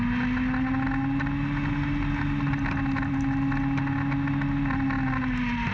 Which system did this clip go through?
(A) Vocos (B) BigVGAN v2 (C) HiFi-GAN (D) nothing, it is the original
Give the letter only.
D